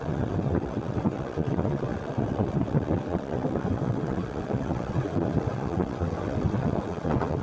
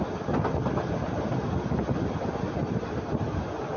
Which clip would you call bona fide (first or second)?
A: second